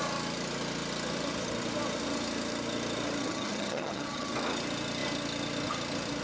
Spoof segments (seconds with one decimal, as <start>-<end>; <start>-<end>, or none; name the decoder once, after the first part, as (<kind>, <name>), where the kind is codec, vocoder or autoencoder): 3.2-4.3 (vocoder, HiFi-GAN)